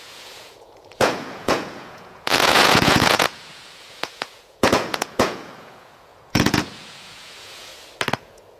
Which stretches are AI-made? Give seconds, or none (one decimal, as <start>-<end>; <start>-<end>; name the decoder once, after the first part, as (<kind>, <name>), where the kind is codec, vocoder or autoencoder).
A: 0.0-7.7 (vocoder, Vocos); 8.2-8.6